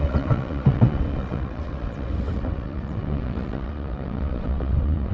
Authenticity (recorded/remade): remade